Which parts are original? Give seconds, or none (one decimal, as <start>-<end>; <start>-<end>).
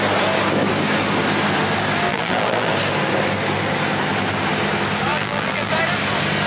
0.0-2.1; 2.7-5.1; 5.7-6.5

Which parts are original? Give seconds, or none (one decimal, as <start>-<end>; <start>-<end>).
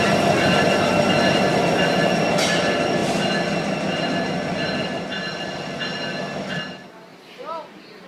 0.0-8.1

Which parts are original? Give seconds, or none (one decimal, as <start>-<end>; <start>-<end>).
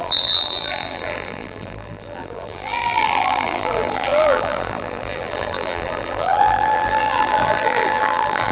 none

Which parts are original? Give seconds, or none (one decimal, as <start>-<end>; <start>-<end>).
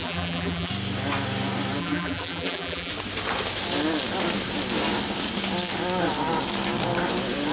0.7-1.8; 2.9-7.5